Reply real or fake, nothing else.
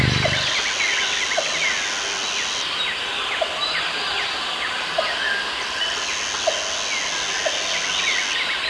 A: real